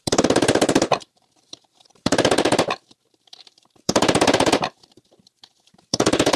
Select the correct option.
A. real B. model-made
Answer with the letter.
B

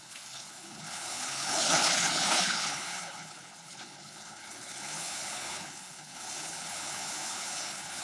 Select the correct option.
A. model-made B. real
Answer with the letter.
A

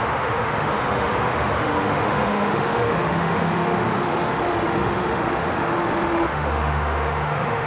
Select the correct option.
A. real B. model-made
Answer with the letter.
B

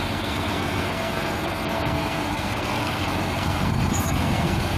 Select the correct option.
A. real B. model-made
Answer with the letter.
B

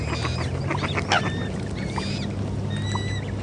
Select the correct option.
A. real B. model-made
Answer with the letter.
B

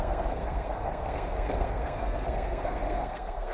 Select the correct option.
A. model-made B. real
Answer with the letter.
A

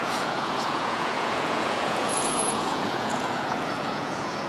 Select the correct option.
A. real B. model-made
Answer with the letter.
B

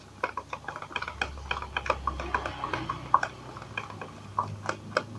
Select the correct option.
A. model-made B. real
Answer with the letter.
B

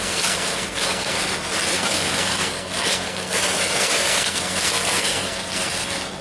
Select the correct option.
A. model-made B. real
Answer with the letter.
A